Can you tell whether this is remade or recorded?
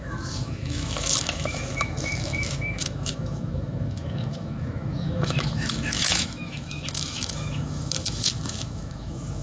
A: remade